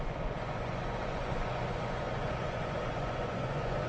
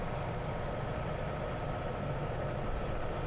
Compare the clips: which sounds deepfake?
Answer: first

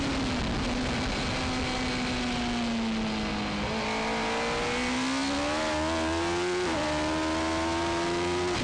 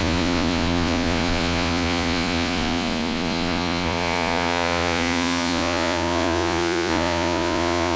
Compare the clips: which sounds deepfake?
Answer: second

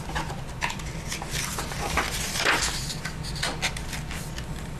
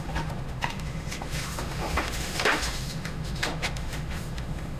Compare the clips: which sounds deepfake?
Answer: second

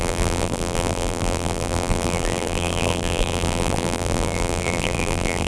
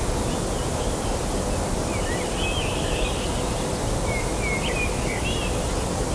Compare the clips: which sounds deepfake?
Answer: first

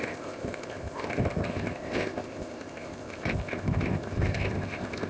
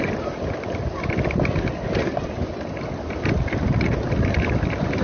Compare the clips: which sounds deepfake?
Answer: first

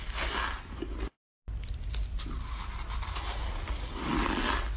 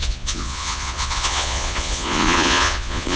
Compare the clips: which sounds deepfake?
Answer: second